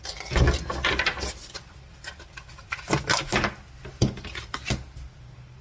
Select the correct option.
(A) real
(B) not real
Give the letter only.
A